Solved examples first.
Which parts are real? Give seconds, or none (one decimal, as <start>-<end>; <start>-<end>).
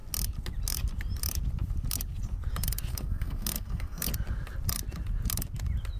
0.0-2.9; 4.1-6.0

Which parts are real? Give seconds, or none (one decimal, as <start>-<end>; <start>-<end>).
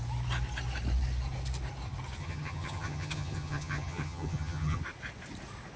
0.0-2.2; 4.8-5.8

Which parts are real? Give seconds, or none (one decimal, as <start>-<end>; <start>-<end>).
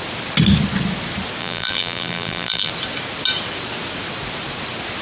0.0-1.4; 2.7-5.0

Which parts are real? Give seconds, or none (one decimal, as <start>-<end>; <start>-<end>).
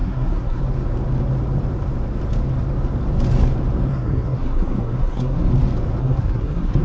0.6-3.9; 5.5-6.0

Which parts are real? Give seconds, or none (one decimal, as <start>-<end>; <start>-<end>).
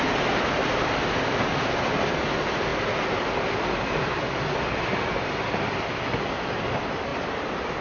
0.0-0.6; 1.8-7.1